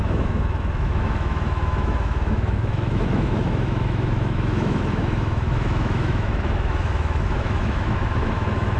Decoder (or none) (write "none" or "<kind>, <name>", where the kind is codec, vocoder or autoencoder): autoencoder, DAC-VAE